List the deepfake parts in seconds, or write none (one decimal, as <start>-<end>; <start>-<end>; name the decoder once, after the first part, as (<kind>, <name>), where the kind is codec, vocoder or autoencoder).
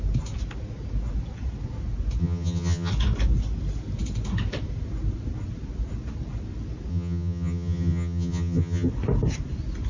2.2-2.9 (vocoder, HiFi-GAN); 6.9-8.9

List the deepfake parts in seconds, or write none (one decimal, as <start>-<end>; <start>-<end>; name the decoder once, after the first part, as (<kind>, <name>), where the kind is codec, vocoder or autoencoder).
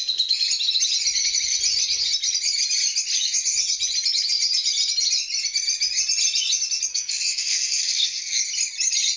6.9-8.4 (codec, SNAC)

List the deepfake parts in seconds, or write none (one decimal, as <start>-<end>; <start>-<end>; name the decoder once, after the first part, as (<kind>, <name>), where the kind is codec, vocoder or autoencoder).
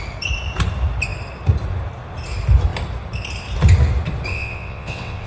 4.3-5.3 (vocoder, WaveNeXt)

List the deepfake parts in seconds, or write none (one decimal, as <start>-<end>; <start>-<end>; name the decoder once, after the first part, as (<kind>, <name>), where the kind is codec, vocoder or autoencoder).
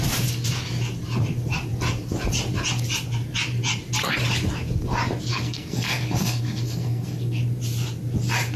5.3-7.4 (codec, SNAC)